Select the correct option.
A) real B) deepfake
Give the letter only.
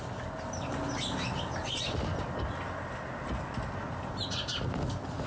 A